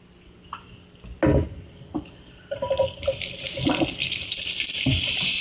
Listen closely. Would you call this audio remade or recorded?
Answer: recorded